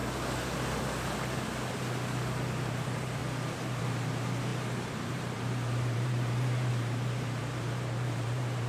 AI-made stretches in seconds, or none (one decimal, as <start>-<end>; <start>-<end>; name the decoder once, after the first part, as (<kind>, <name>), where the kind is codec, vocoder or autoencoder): 2.7-3.2 (vocoder, BigVGAN v2); 3.8-8.7